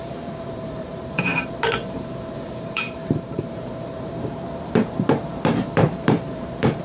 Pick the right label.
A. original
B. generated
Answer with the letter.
B